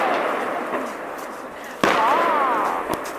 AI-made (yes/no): no